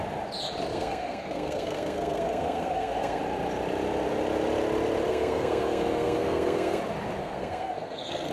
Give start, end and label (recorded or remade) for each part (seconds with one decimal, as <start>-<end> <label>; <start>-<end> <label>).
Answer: 0.0-0.7 recorded; 0.7-3.2 remade; 3.2-5.1 recorded; 5.1-6.8 remade; 6.8-7.2 recorded; 7.2-8.3 remade